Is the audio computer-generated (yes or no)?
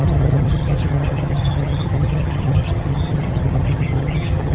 yes